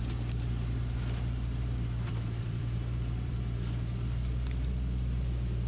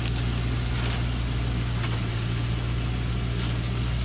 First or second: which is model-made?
first